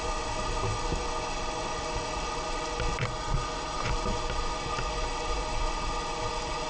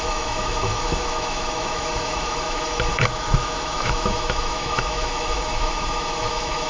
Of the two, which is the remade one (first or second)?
second